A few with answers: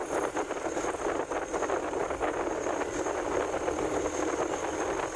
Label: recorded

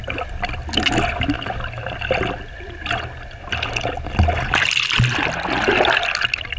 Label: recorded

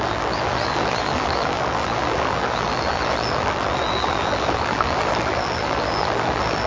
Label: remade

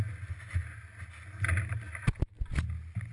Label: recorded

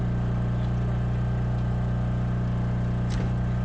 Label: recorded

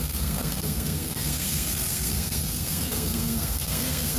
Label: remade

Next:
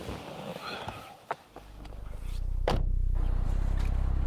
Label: recorded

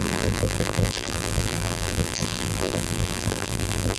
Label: remade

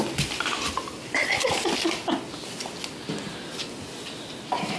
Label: recorded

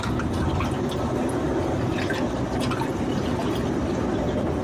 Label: recorded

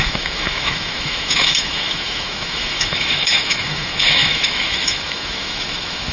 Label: remade